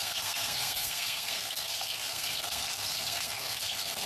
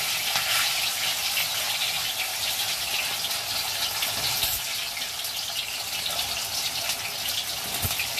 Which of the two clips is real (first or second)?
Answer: second